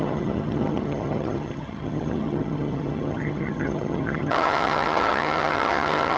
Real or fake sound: fake